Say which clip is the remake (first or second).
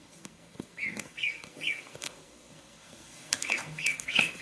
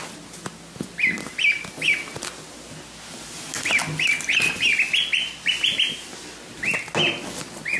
first